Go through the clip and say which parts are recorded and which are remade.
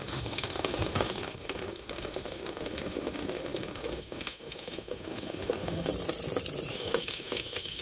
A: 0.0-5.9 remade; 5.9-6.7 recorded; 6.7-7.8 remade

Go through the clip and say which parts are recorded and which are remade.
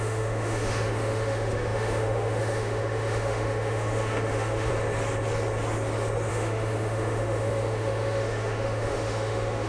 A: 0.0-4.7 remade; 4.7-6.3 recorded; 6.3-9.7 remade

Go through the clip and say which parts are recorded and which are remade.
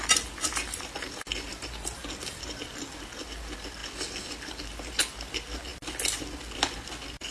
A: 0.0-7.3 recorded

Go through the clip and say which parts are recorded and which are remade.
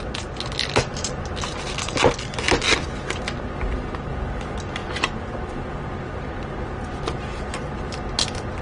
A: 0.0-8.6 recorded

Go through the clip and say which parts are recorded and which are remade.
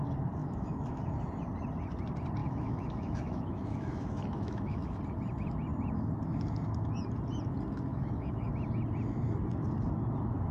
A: 0.0-0.4 recorded; 0.4-1.2 remade; 1.2-2.4 recorded; 2.4-5.0 remade; 5.0-7.9 recorded; 7.9-8.5 remade; 8.5-10.5 recorded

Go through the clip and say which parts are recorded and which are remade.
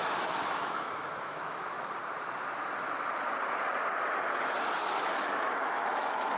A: 0.0-2.0 remade; 2.0-4.8 recorded; 4.8-6.4 remade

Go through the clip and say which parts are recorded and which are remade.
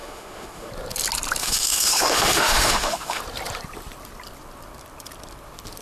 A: 0.0-0.7 remade; 0.7-1.4 recorded; 1.4-3.2 remade; 3.2-5.8 recorded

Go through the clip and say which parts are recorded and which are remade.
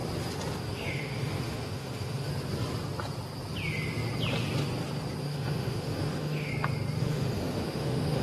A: 0.0-0.6 recorded; 0.6-2.3 remade; 2.3-5.2 recorded; 5.2-6.5 remade; 6.5-7.0 recorded; 7.0-8.2 remade